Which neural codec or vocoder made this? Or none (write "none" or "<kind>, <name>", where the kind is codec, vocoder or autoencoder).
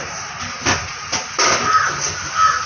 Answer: none